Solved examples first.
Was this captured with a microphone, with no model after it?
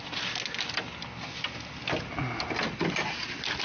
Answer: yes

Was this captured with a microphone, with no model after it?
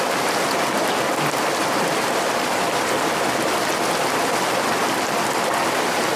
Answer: yes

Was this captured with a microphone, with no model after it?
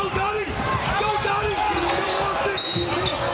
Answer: yes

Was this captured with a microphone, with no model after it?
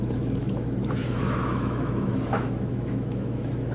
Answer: no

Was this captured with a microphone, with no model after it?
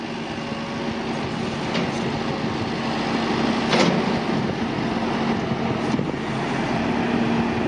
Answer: yes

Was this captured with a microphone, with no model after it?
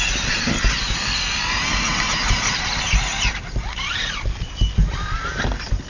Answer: yes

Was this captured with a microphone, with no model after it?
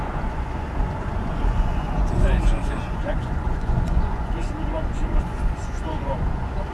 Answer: no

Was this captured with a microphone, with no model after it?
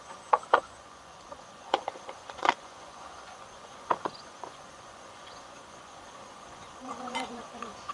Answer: no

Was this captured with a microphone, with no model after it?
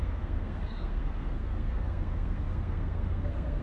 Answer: no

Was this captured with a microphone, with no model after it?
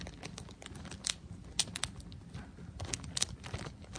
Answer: yes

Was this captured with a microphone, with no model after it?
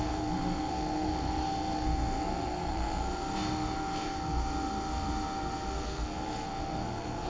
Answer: no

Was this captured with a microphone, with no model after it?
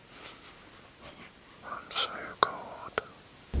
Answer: yes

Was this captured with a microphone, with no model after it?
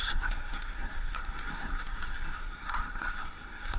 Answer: no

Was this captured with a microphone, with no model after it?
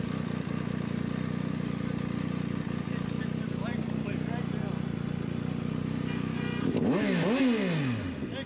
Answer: yes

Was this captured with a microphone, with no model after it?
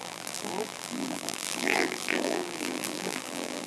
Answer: no